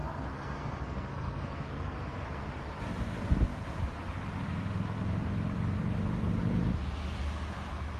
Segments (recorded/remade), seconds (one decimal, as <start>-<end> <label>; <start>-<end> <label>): 0.0-2.5 remade; 2.5-8.0 recorded